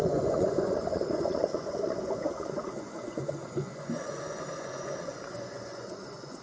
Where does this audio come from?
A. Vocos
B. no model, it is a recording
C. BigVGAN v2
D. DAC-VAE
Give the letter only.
A